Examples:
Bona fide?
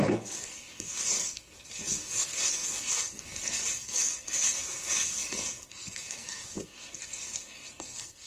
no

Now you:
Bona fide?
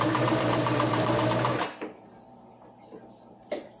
no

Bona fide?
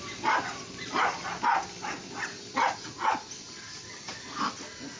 yes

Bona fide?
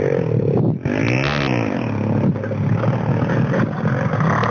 yes